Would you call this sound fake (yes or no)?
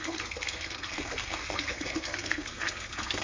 yes